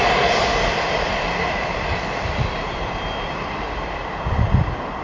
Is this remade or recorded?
remade